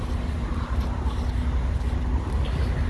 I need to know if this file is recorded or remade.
recorded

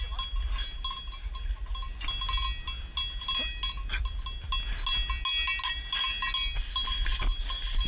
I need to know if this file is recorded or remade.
recorded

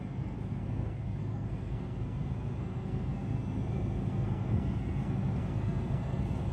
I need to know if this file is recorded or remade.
remade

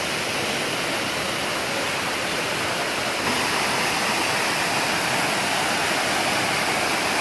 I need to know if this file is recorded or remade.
recorded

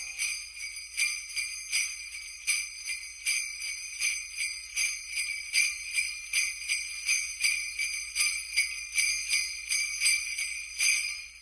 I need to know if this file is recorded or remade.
recorded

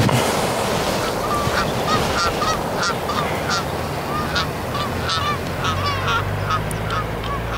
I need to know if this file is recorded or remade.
recorded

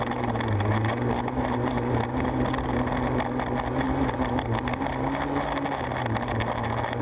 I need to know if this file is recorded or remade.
recorded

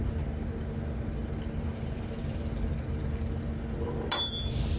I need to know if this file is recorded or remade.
recorded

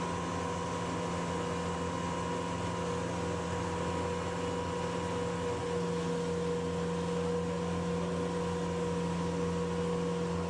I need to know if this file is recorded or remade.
recorded